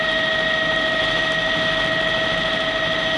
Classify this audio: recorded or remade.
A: recorded